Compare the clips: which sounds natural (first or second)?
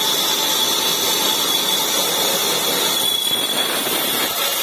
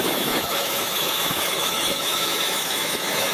first